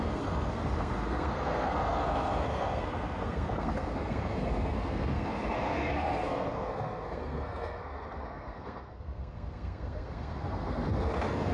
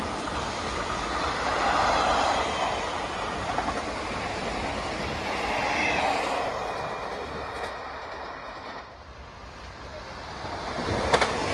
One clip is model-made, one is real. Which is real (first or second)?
second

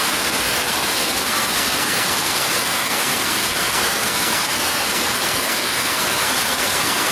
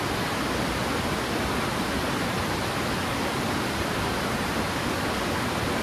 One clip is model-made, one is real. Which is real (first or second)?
second